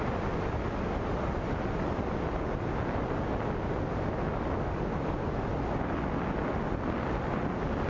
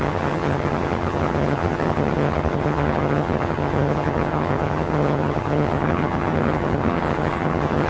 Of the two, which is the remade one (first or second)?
second